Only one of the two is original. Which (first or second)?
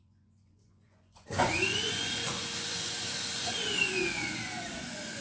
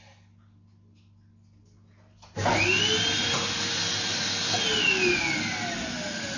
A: second